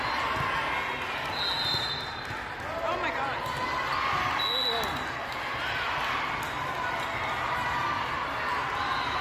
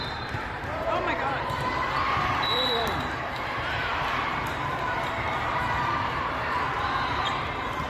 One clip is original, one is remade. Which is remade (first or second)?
second